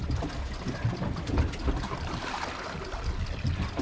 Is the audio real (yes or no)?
yes